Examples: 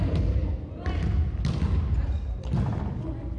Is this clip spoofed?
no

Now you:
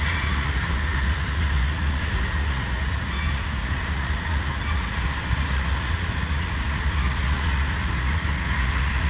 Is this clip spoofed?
yes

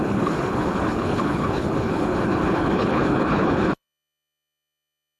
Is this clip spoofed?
yes